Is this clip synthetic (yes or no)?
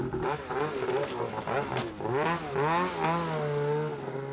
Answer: no